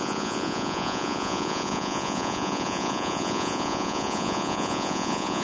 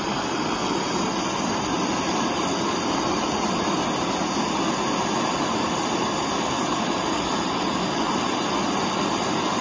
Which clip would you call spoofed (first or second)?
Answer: first